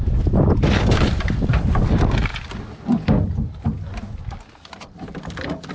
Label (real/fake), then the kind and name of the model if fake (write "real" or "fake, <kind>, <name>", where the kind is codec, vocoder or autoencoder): real